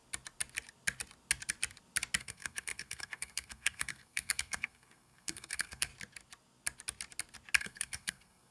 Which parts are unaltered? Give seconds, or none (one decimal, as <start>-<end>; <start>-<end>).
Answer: 0.0-2.2; 5.9-7.6